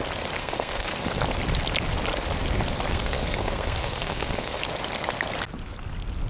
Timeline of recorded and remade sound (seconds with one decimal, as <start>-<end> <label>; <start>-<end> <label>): 0.0-0.4 recorded; 0.4-1.2 remade; 1.2-2.9 recorded; 2.9-4.6 remade; 4.6-6.3 recorded